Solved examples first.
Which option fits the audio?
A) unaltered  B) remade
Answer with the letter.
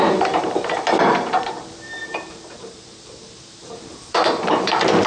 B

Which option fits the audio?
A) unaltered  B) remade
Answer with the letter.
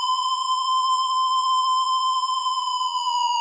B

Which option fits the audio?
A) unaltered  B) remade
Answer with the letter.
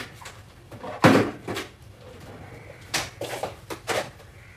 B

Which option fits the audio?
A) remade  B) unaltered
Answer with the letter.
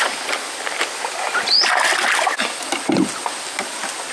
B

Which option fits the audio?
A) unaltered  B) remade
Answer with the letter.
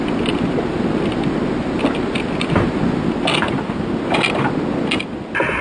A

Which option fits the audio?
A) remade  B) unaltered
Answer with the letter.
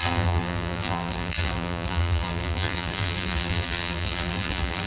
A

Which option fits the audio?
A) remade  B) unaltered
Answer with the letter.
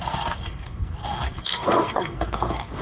A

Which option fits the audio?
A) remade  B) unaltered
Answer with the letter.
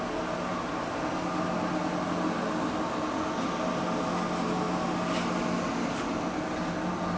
B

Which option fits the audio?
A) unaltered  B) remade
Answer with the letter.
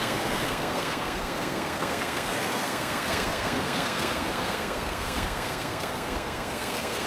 B